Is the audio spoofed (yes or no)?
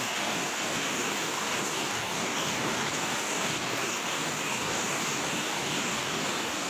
yes